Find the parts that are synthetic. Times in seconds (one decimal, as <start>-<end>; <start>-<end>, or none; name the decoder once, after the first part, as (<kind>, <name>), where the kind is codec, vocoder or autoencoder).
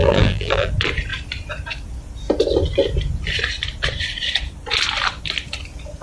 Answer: 0.0-0.7 (vocoder, BigVGAN v2)